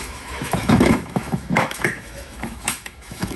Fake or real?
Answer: fake